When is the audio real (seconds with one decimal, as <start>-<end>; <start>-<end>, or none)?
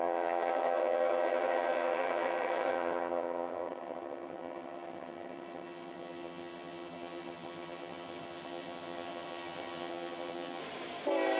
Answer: 10.6-11.4